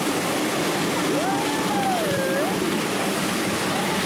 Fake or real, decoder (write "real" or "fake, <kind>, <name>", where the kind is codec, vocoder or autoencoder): fake, vocoder, BigVGAN v2